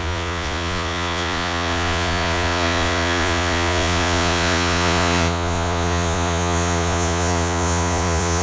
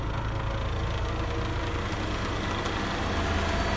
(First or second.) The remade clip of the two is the first